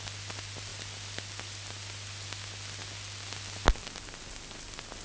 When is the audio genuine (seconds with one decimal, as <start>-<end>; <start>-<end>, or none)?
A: 0.0-5.0